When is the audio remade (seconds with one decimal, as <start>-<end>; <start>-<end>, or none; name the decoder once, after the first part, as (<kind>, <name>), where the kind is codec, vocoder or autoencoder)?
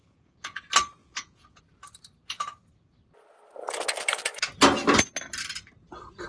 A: 0.0-0.6 (vocoder, Vocos); 1.0-1.6